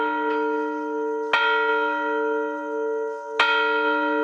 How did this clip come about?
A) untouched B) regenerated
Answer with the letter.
A